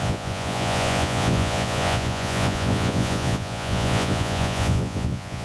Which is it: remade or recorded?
remade